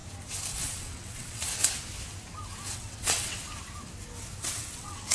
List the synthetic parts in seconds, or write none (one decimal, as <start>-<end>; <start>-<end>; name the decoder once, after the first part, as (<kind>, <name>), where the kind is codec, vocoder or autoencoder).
0.5-1.5 (vocoder, WaveNeXt); 2.7-3.4; 4.4-5.1